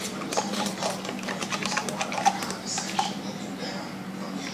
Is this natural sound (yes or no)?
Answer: yes